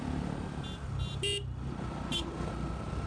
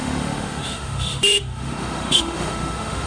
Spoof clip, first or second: second